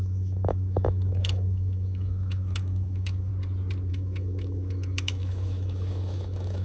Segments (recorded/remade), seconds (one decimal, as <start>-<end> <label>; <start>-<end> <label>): 0.0-3.3 remade; 3.3-3.9 recorded; 3.9-6.6 remade